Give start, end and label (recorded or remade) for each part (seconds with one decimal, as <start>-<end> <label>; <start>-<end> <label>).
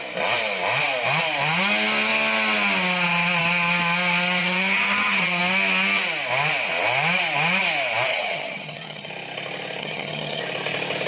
0.0-4.4 recorded; 4.4-5.4 remade; 5.4-8.1 recorded; 8.1-9.1 remade; 9.1-9.8 recorded; 9.8-10.4 remade; 10.4-11.1 recorded